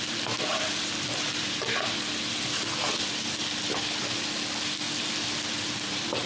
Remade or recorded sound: recorded